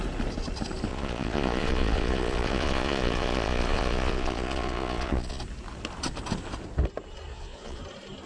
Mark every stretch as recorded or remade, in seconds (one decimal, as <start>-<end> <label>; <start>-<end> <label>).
0.0-0.9 recorded; 0.9-5.4 remade; 5.4-7.3 recorded; 7.3-7.8 remade; 7.8-8.3 recorded